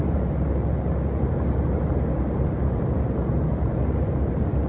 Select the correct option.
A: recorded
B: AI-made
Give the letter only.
A